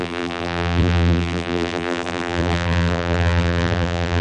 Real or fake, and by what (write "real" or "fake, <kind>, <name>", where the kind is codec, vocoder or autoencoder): fake, vocoder, BigVGAN v2